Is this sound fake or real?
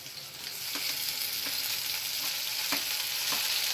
real